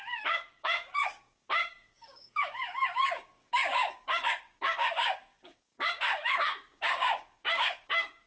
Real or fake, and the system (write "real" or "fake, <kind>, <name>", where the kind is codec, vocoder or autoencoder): fake, codec, DAC